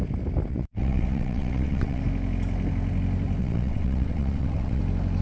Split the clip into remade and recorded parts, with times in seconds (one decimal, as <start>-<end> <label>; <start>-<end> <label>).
0.0-0.5 recorded; 0.5-2.0 remade; 2.0-3.4 recorded; 3.4-4.8 remade; 4.8-5.2 recorded